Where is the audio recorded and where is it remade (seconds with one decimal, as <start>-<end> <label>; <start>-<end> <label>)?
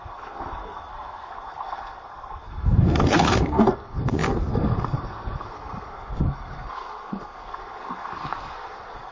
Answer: 0.0-9.1 remade